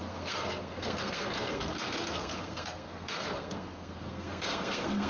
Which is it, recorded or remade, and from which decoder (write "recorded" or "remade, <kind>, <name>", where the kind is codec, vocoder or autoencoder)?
remade, codec, SNAC